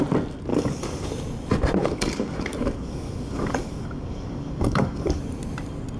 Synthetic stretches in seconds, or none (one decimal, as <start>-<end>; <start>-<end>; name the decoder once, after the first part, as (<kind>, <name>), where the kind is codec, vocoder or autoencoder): 0.5-1.1 (codec, DAC); 1.8-5.2